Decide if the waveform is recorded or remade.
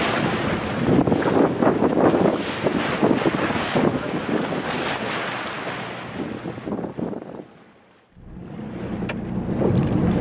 recorded